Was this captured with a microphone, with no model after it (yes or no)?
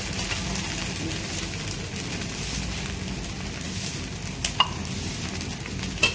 yes